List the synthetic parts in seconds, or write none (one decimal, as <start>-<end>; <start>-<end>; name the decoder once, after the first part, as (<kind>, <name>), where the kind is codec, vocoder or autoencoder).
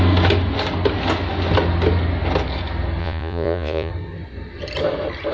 3.0-3.9 (vocoder, Vocos)